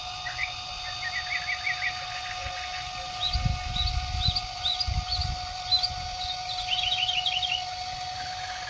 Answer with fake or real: real